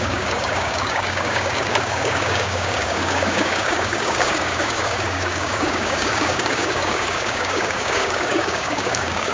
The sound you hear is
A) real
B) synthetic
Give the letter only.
B